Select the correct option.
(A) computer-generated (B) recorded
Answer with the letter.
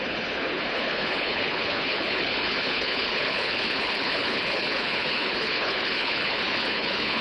A